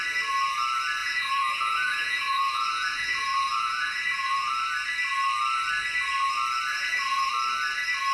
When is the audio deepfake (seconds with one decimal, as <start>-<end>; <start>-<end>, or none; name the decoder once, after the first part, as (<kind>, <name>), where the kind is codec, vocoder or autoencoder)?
1.0-4.5 (vocoder, Vocos); 6.7-7.3

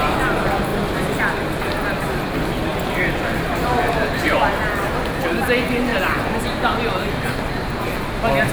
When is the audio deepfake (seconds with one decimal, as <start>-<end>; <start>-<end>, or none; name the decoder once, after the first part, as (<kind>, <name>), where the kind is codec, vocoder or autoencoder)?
2.7-4.8 (vocoder, BigVGAN v2); 5.9-6.4

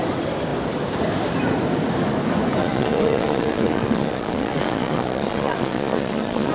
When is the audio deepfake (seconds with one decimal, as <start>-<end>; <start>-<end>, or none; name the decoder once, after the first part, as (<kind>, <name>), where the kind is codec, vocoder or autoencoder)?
2.6-6.5 (vocoder, Vocos)

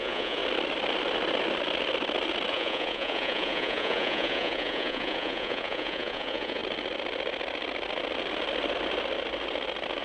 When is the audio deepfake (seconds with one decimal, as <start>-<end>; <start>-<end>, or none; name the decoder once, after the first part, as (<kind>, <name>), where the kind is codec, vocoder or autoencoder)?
0.0-0.4 (vocoder, Vocos); 2.5-6.6

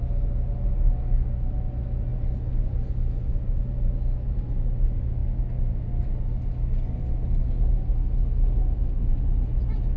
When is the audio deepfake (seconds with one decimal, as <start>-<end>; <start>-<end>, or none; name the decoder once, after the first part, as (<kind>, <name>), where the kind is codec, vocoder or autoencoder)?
9.1-10.0 (vocoder, Vocos)

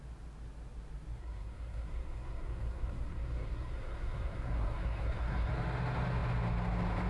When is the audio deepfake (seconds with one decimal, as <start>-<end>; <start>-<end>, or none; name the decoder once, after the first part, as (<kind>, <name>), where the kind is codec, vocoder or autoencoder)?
1.2-5.5 (codec, SNAC)